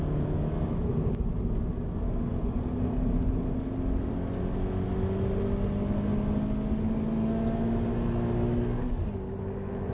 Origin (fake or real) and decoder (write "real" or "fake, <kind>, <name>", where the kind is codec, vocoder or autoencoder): real